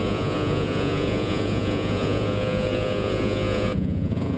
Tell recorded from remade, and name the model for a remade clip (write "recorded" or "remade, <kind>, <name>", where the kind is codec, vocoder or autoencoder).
remade, vocoder, Vocos